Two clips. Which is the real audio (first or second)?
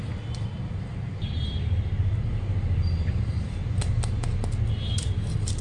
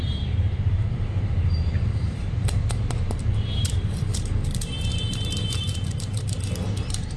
first